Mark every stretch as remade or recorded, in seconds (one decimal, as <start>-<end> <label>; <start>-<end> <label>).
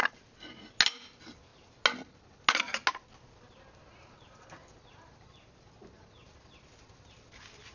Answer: 0.0-7.7 recorded